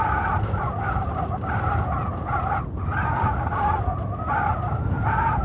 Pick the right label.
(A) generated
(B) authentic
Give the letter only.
B